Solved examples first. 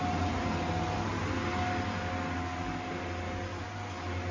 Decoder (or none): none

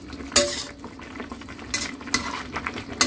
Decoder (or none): none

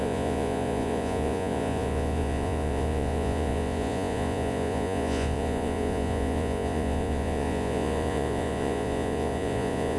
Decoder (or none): vocoder, Vocos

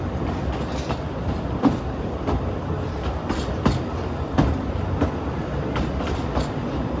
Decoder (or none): none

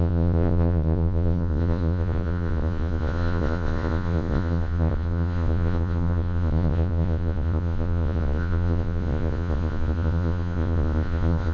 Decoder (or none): vocoder, Vocos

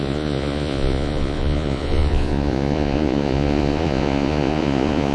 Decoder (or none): vocoder, Vocos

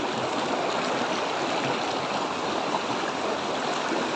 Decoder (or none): none